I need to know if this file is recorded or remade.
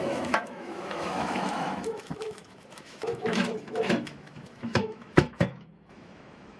remade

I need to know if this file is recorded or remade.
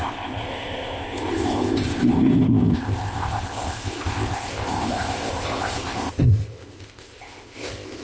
remade